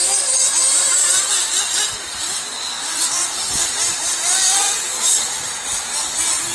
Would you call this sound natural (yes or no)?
yes